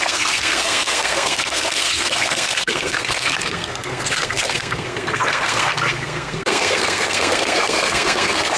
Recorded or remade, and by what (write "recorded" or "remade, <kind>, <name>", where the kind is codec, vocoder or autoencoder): remade, codec, SNAC